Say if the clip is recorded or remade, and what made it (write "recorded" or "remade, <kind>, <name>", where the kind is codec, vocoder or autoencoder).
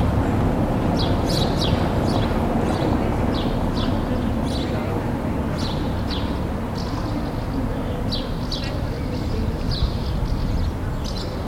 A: recorded